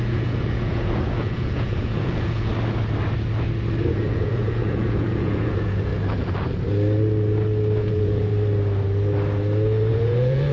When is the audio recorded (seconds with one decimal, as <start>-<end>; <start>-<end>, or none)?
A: 2.5-3.9; 5.9-7.8; 8.3-9.9

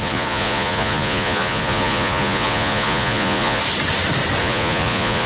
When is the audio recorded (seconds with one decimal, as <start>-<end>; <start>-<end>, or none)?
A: 3.6-4.4

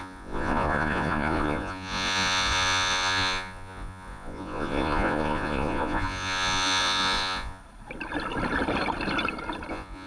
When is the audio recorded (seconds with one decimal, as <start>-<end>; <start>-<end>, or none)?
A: 7.6-9.7

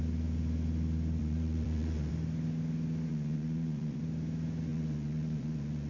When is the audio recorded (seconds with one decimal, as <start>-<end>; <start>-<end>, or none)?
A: 0.0-1.2; 2.1-3.1; 4.0-4.7